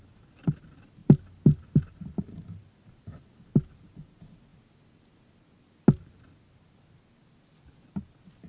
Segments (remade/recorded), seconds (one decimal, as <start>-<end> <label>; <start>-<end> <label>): 0.0-8.5 recorded